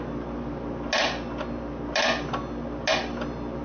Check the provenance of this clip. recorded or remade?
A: recorded